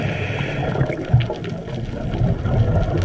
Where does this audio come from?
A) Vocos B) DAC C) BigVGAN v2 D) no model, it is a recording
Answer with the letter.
D